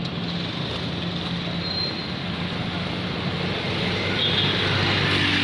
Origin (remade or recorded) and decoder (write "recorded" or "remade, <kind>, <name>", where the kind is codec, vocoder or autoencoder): recorded